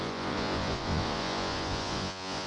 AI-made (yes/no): yes